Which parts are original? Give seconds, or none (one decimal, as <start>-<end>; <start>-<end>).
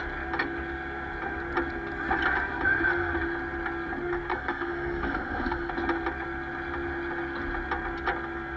0.0-4.3; 5.7-8.6